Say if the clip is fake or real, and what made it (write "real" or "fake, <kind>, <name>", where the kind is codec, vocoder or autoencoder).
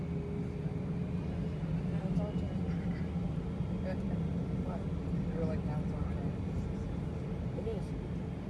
real